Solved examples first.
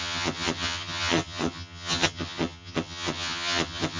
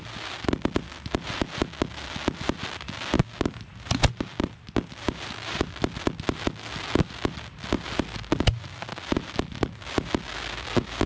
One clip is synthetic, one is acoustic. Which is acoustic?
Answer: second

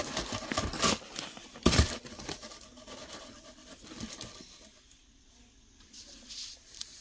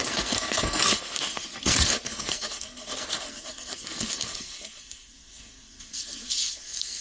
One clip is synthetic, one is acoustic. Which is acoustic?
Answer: first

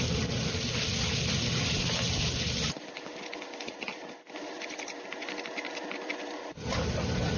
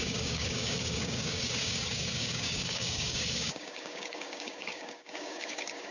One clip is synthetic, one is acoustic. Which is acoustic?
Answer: first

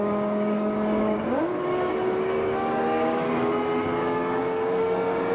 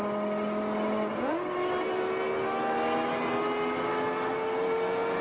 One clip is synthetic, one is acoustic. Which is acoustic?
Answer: second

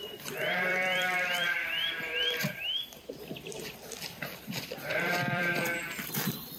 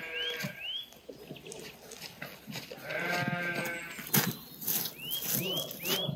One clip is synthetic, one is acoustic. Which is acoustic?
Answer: second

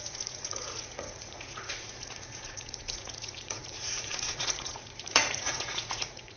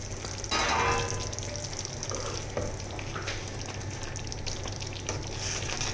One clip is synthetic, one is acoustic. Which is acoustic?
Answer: second